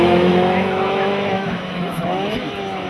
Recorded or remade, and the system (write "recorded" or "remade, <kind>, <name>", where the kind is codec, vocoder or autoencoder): remade, autoencoder, DAC-VAE